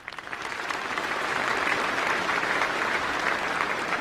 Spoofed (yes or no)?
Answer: yes